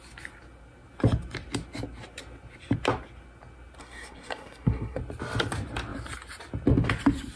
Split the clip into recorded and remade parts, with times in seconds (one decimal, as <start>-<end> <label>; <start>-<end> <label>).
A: 0.0-3.8 recorded; 3.8-5.0 remade; 5.0-7.4 recorded